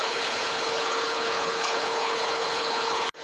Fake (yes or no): yes